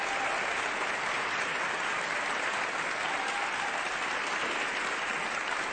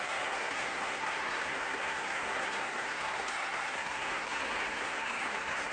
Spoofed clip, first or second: second